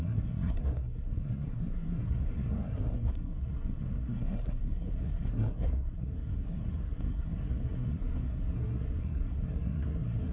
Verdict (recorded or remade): remade